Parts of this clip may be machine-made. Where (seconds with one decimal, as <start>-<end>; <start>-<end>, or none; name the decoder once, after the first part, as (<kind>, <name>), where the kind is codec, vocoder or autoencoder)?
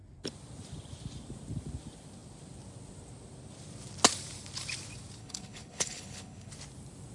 5.2-6.5 (codec, HILCodec)